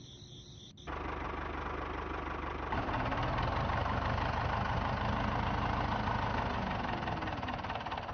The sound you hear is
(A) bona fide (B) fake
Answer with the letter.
A